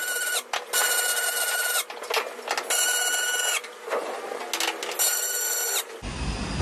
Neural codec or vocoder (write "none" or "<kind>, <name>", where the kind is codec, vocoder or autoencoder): none